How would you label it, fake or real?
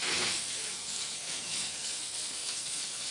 fake